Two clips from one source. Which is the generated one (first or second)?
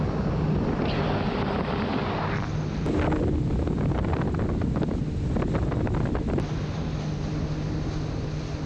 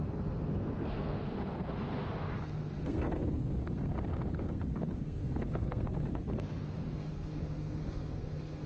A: second